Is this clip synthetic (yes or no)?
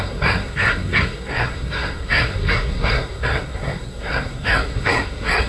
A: yes